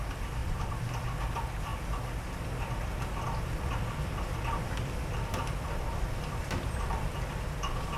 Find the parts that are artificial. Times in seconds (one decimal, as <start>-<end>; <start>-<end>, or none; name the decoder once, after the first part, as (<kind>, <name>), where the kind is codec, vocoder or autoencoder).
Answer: 0.4-1.0 (vocoder, BigVGAN v2)